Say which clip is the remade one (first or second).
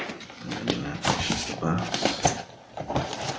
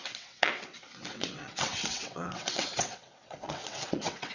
second